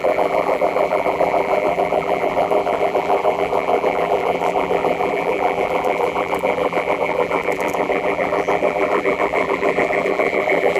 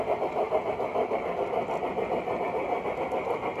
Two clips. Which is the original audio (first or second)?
second